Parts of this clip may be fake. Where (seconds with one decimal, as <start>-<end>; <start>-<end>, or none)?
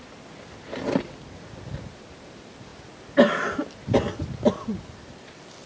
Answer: none